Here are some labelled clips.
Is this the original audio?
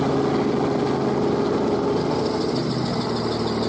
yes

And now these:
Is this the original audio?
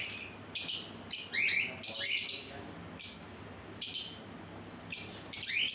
yes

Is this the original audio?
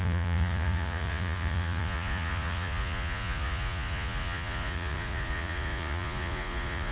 no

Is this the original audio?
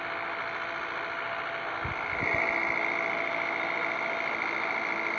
yes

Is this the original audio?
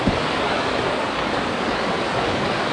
no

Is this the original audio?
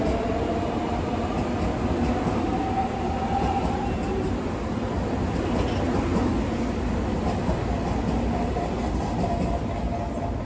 yes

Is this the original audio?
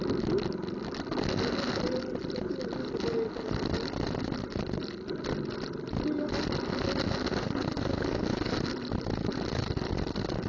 yes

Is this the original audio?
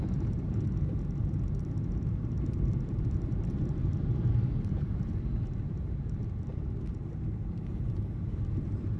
no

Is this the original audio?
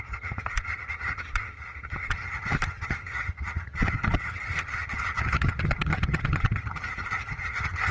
no